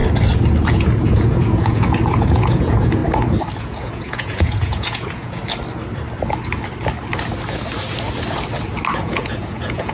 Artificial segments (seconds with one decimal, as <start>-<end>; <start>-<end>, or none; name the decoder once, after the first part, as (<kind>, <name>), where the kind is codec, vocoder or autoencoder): 0.7-3.0 (vocoder, Vocos); 3.6-5.4; 9.0-9.9